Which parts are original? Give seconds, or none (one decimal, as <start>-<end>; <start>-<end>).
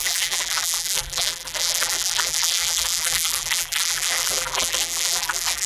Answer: none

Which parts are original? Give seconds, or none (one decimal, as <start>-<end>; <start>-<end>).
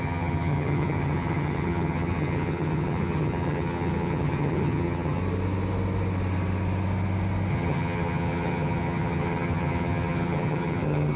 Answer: 5.2-7.5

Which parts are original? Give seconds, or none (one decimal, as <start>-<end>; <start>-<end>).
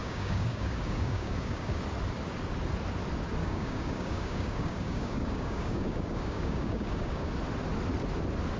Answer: 1.8-3.4; 7.3-8.6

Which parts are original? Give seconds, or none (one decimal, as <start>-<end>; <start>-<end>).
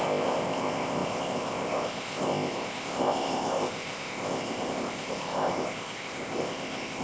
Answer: none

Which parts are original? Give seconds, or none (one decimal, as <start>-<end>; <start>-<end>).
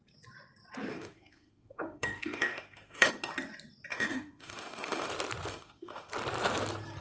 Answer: 0.0-0.9; 3.1-3.9; 5.1-5.5; 6.1-7.0